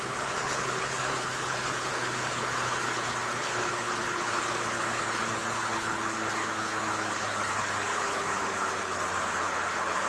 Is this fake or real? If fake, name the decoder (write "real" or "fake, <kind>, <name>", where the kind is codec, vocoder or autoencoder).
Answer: fake, codec, HILCodec